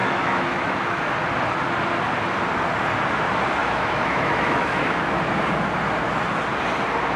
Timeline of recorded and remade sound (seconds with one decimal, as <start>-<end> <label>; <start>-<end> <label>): 0.0-1.0 remade; 1.0-3.6 recorded; 3.6-5.2 remade; 5.2-7.2 recorded